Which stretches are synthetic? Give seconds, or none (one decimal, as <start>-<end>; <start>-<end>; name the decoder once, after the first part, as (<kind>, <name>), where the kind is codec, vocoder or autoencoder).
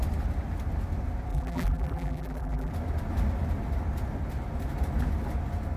1.3-2.7 (vocoder, BigVGAN v2)